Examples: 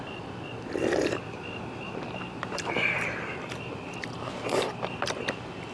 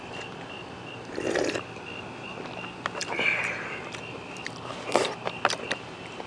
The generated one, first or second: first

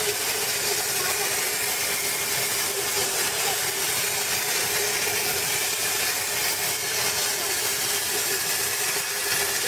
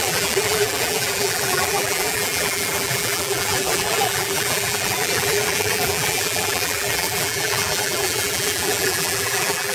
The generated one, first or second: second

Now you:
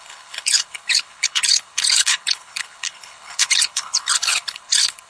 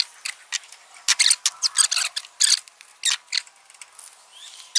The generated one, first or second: first